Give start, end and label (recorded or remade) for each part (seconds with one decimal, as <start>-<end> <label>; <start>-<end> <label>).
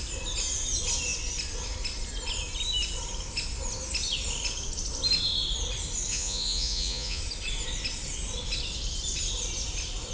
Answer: 0.0-6.1 recorded; 6.1-7.2 remade; 7.2-10.1 recorded